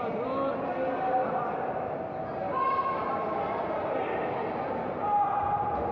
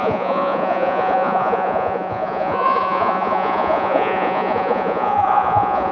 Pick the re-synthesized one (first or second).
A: second